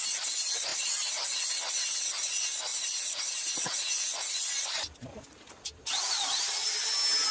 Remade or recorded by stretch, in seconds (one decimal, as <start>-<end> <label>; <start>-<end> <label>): 0.0-7.3 recorded